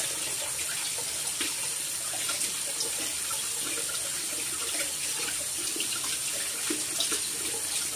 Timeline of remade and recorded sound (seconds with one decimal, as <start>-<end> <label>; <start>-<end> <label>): 0.0-8.0 recorded